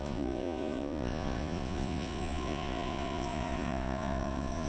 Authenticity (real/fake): fake